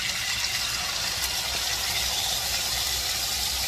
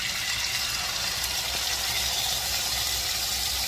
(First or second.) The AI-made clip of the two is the first